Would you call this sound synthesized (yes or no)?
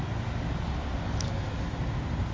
no